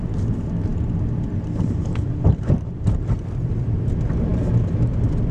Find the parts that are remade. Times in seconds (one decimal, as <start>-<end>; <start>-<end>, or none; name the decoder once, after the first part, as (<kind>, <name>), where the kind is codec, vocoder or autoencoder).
none